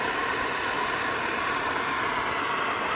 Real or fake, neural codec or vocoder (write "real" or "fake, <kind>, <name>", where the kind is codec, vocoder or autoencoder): real